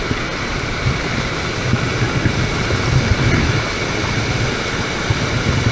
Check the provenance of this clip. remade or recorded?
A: recorded